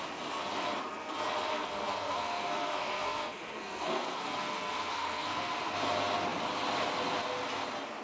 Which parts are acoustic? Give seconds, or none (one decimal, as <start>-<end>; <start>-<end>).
0.0-1.5; 5.6-8.0